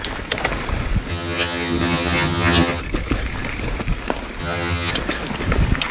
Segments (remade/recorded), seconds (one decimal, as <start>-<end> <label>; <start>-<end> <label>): 0.0-1.1 recorded; 1.1-2.8 remade; 2.8-4.4 recorded; 4.4-4.9 remade; 4.9-5.9 recorded